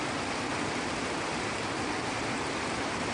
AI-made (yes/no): no